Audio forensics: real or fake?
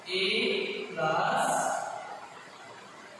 real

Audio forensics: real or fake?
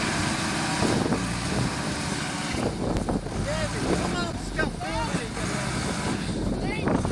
real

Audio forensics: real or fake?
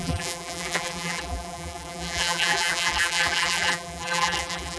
fake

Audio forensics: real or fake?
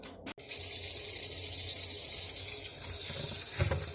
real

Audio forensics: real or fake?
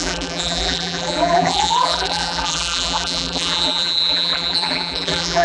fake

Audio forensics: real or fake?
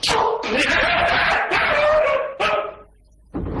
fake